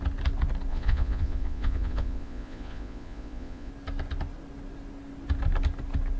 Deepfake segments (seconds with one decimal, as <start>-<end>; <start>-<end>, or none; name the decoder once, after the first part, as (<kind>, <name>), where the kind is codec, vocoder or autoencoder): 0.7-3.7 (vocoder, Vocos)